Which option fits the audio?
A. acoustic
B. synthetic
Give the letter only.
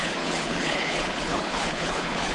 B